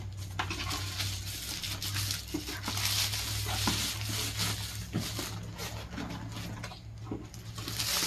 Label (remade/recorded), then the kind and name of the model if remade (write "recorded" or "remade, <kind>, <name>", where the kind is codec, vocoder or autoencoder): recorded